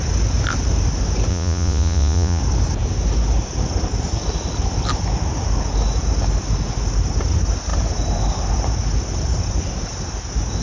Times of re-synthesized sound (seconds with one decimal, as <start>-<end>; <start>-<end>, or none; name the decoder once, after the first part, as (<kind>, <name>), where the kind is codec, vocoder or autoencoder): 1.3-2.4 (vocoder, Vocos)